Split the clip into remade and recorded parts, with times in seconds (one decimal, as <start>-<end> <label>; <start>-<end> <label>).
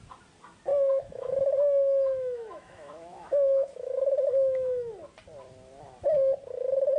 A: 0.0-0.7 recorded; 0.7-4.9 remade; 4.9-7.0 recorded